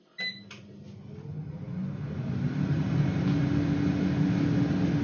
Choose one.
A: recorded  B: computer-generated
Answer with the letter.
A